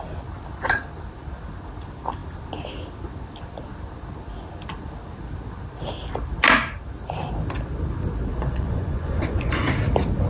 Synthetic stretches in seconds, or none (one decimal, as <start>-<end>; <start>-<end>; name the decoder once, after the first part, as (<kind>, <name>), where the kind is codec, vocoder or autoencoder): 8.3-9.6 (vocoder, Vocos)